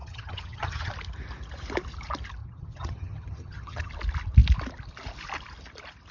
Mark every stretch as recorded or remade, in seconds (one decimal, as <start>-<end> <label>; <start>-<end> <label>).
0.0-0.9 remade; 0.9-2.4 recorded; 2.4-3.9 remade; 3.9-6.1 recorded